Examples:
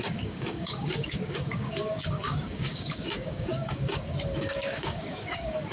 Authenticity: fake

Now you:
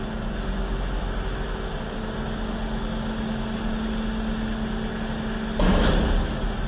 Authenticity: real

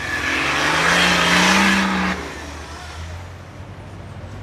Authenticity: real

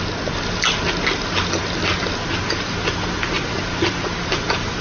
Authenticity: real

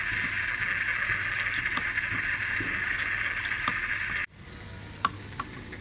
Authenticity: real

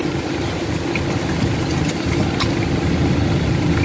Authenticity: real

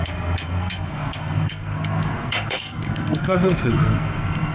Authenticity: fake